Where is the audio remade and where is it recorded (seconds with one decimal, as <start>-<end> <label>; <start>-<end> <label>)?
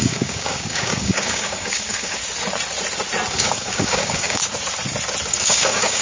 0.0-2.2 remade; 2.2-3.3 recorded; 3.3-4.4 remade; 4.4-5.3 recorded; 5.3-6.0 remade